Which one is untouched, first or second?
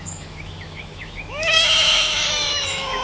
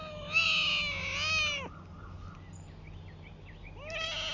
second